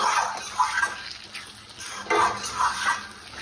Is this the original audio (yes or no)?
yes